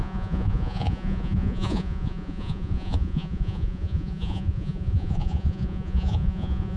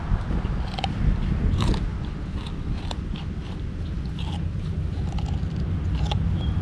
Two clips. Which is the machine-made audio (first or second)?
first